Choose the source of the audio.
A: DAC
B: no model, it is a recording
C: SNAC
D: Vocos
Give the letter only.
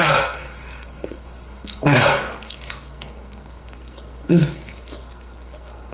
C